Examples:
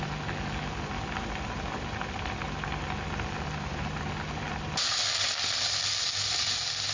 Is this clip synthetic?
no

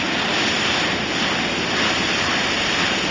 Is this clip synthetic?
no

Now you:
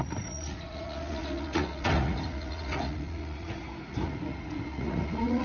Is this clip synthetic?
yes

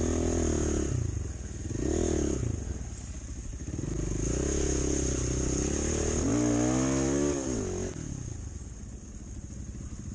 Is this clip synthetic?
no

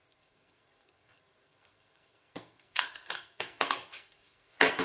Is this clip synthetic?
yes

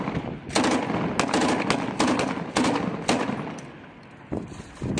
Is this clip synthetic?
no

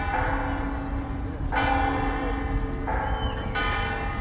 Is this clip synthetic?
no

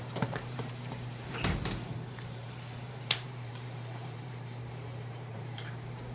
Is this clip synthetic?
yes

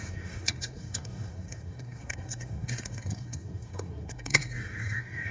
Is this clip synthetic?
yes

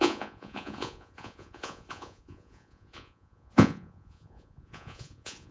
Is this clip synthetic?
yes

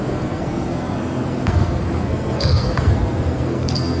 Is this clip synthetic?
yes